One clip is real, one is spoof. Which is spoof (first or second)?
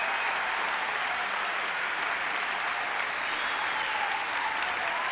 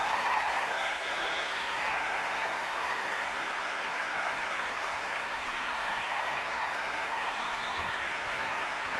second